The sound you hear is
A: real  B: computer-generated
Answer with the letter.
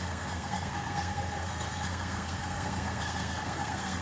B